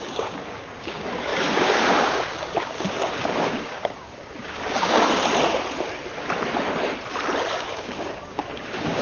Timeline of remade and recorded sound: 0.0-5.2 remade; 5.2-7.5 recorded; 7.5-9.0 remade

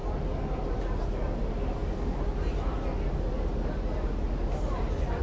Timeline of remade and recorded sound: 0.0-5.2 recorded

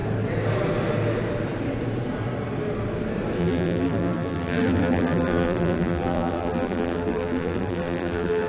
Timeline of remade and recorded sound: 0.0-3.4 recorded; 3.4-8.5 remade

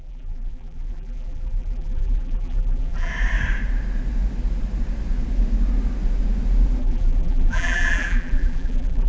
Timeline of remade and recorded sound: 0.0-3.1 remade; 3.1-6.8 recorded; 6.8-9.1 remade

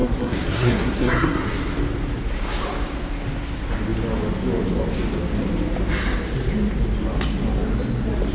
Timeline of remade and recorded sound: 0.0-1.7 remade; 1.7-8.3 recorded

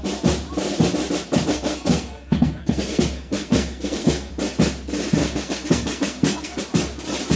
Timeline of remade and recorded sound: 0.0-1.5 recorded; 1.5-4.3 remade; 4.3-5.2 recorded; 5.2-6.6 remade; 6.6-7.4 recorded